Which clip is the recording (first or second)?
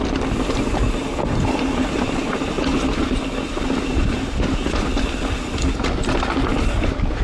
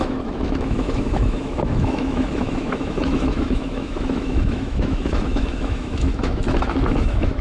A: first